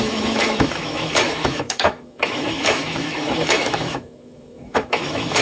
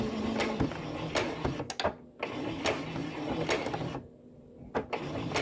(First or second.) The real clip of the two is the second